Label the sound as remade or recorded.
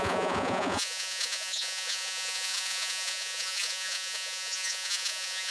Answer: remade